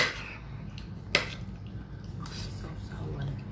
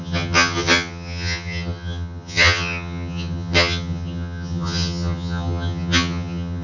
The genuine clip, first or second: first